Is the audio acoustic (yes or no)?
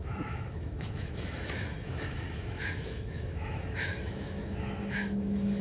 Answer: no